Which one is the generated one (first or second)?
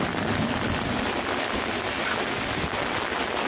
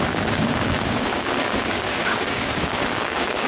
second